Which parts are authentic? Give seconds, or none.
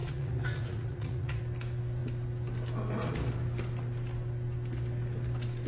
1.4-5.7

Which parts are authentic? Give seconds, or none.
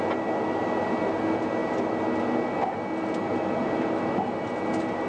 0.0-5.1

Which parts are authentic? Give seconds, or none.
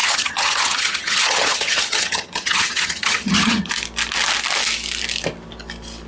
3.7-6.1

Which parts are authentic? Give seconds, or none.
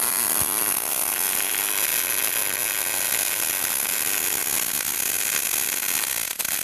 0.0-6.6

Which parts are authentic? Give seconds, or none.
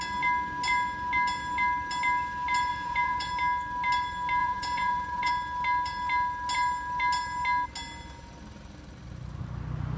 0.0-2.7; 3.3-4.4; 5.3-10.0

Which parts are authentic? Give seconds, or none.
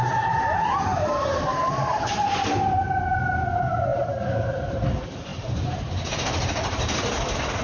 0.0-0.9; 2.8-3.9; 4.8-5.3; 5.9-7.6